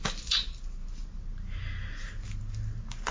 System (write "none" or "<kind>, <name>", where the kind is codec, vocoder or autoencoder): none